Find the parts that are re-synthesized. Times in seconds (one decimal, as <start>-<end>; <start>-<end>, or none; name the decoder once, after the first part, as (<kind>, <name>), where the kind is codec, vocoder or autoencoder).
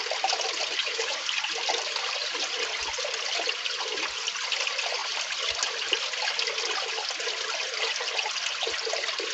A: 0.8-1.3 (codec, DAC)